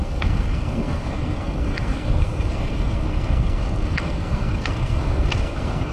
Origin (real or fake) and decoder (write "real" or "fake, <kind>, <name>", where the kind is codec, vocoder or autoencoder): fake, codec, SNAC